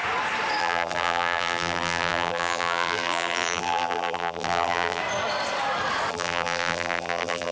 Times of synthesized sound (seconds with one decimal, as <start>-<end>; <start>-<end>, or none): 0.6-5.0; 6.1-7.5